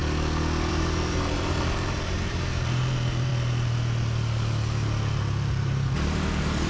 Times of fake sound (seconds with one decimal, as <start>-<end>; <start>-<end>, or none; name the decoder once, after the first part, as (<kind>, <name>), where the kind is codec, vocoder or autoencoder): 0.7-3.3 (vocoder, BigVGAN v2); 5.2-6.7